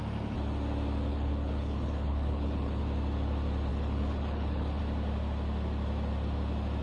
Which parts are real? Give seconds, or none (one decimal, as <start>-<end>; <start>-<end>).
0.0-1.1; 2.8-3.7; 4.8-6.8